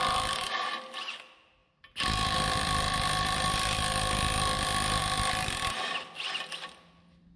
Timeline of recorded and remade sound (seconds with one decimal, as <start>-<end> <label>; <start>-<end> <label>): 0.0-5.0 remade; 5.0-7.4 recorded